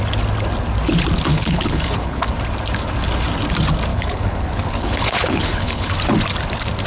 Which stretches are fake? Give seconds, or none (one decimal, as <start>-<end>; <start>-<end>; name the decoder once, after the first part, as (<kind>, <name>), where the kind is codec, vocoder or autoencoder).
1.3-2.3 (codec, HILCodec); 3.9-5.9

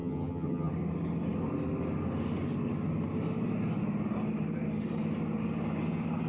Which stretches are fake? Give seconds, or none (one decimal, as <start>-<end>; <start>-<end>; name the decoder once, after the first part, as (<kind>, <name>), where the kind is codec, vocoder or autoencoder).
0.0-0.7 (vocoder, HiFi-GAN)

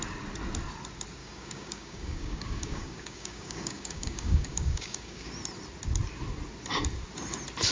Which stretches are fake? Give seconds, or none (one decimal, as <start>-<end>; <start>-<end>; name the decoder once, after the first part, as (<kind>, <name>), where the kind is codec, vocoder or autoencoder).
1.2-5.3 (codec, DAC)

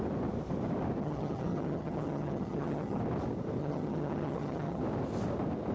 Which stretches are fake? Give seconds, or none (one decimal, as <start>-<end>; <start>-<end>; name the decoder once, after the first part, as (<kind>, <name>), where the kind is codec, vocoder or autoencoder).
1.0-3.0 (vocoder, HiFi-GAN); 3.6-4.8

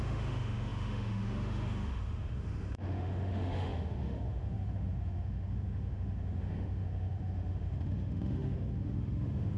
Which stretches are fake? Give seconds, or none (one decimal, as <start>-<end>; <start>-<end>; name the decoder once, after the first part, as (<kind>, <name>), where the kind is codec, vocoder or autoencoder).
0.0-9.6 (autoencoder, DAC-VAE)

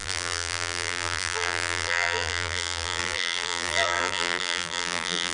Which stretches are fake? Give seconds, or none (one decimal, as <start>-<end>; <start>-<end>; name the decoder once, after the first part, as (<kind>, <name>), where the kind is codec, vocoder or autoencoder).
0.0-5.3 (vocoder, BigVGAN v2)

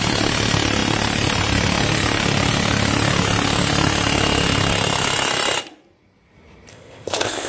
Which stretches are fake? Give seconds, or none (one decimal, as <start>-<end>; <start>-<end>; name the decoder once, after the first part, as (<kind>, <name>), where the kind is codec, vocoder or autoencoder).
6.7-7.5 (codec, ZipCodec)

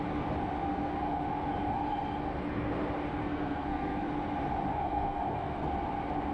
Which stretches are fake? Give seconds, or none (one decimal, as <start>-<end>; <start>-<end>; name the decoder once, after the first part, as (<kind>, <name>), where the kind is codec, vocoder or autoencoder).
0.6-1.1 (codec, SNAC); 3.2-4.1; 4.7-5.7